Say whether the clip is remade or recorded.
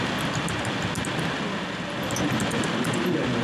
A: recorded